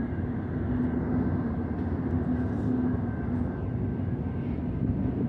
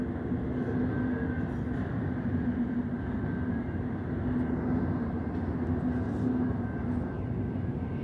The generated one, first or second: first